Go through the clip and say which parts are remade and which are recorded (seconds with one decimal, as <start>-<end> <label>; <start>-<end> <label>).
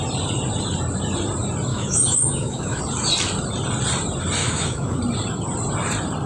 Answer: 0.0-1.7 recorded; 1.7-2.8 remade; 2.8-4.4 recorded; 4.4-5.0 remade; 5.0-6.3 recorded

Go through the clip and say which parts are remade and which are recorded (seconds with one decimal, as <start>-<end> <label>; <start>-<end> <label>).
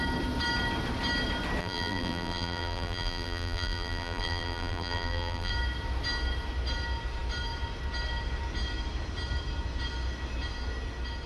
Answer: 0.0-1.6 recorded; 1.6-5.5 remade; 5.5-11.3 recorded